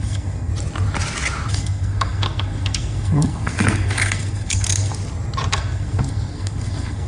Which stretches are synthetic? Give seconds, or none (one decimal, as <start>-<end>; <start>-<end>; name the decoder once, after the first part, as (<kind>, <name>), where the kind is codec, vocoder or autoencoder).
0.0-0.5 (codec, SNAC); 1.5-4.9; 5.5-7.1